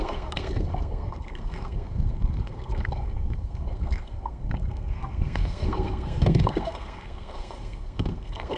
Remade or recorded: remade